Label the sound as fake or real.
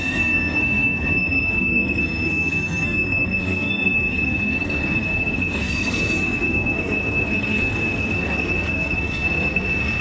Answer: fake